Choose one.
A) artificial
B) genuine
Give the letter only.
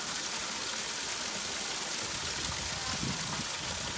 B